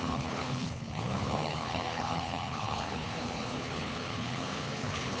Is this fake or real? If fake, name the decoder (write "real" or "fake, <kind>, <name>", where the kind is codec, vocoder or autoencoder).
fake, codec, HILCodec